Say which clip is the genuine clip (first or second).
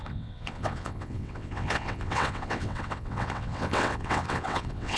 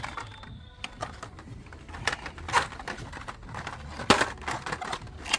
second